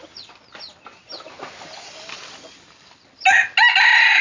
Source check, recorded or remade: recorded